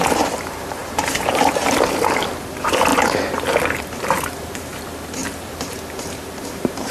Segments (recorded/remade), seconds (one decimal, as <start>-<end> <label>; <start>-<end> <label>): 0.0-2.9 remade; 2.9-3.8 recorded; 3.8-5.2 remade; 5.2-6.5 recorded; 6.5-6.9 remade